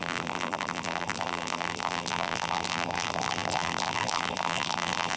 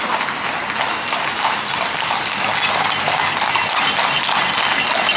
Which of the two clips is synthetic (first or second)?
first